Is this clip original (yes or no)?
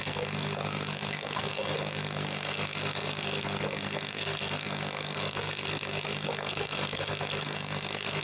no